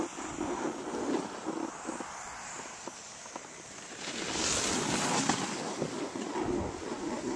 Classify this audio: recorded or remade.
recorded